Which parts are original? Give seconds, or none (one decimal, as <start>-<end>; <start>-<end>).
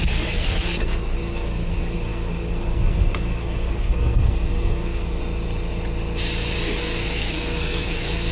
5.2-6.8